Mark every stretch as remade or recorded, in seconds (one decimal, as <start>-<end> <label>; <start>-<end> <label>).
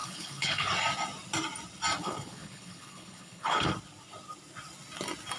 0.0-0.7 remade; 0.7-2.0 recorded; 2.0-3.7 remade; 3.7-5.4 recorded